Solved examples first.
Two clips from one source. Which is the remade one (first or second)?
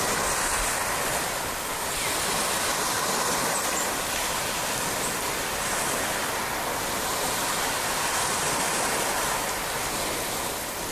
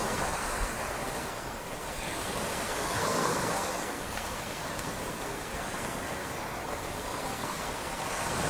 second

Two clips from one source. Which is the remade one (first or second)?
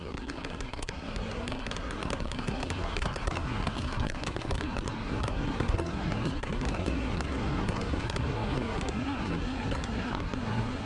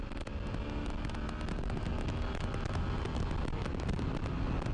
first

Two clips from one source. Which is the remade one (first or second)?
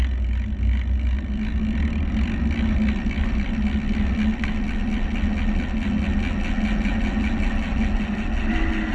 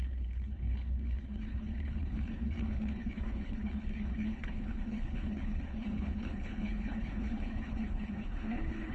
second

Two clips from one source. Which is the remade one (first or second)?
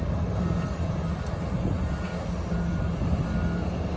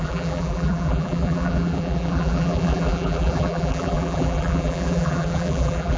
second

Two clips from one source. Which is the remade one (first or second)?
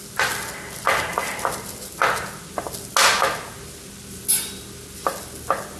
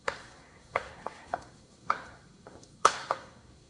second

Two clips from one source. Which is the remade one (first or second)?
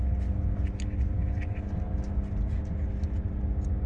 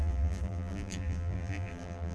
second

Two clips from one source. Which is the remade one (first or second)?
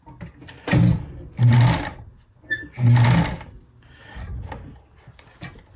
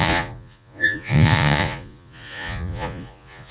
second